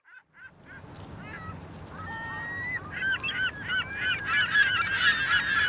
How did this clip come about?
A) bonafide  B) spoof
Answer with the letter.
A